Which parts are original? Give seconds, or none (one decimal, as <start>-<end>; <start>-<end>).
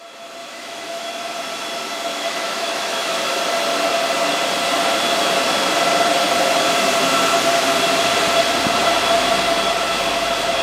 0.0-0.4; 1.1-2.1; 3.3-10.6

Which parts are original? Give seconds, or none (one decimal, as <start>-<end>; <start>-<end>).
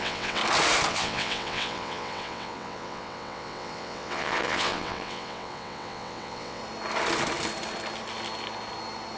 0.4-0.9; 6.6-9.2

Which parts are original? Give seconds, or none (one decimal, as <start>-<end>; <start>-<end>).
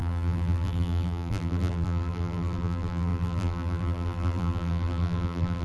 none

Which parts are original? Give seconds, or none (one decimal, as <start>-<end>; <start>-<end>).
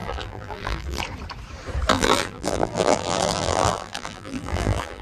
1.0-1.9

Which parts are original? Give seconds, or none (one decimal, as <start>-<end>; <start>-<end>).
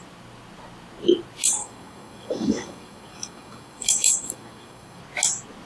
0.0-1.6; 5.0-5.7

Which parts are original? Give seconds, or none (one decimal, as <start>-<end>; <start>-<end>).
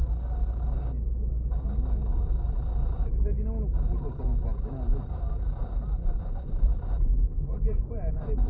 0.0-4.7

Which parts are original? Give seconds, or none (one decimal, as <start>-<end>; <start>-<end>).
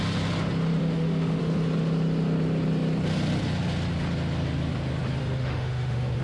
0.0-0.8; 1.4-5.2